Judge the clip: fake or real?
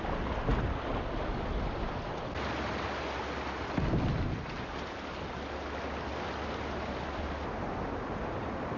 real